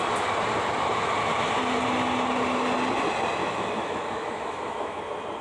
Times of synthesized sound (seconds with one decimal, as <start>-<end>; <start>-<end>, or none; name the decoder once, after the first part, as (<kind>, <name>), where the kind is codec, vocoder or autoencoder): 3.4-5.0 (autoencoder, DAC-VAE)